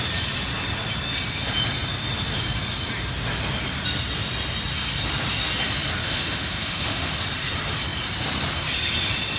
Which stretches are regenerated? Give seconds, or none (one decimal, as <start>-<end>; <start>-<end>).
6.0-7.1